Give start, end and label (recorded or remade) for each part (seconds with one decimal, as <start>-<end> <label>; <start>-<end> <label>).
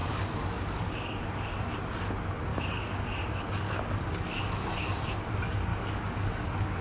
0.0-1.2 remade; 1.2-2.5 recorded; 2.5-4.4 remade; 4.4-5.7 recorded; 5.7-6.8 remade